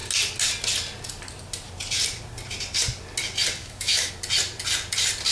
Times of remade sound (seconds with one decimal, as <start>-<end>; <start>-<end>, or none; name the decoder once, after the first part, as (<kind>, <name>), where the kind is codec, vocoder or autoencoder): 3.6-4.1 (autoencoder, DAC-VAE)